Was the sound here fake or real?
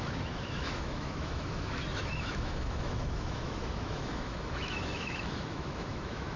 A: fake